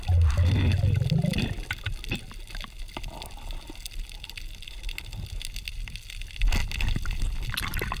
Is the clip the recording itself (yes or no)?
yes